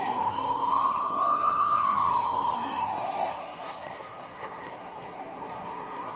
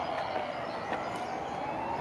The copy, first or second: first